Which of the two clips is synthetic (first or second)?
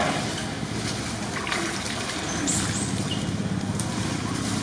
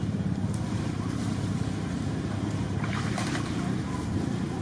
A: second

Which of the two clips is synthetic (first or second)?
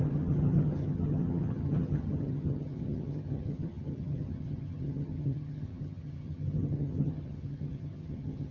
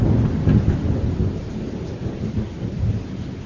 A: first